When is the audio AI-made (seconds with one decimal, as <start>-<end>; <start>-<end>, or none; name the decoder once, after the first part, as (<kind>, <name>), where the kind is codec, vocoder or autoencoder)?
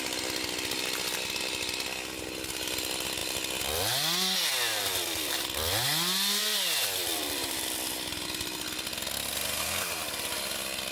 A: none